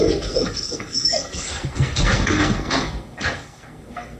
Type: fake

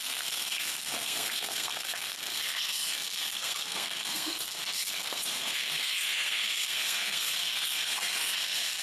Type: fake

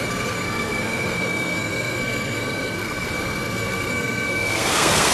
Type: fake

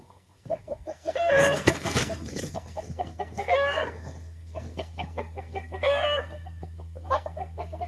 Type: fake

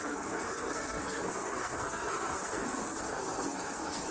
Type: fake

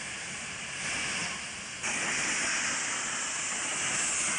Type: real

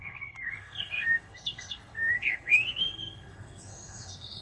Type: fake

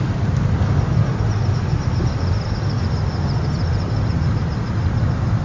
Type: real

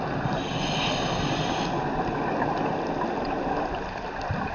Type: real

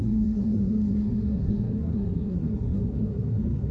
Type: fake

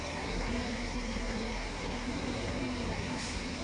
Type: fake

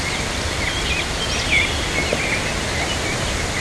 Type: real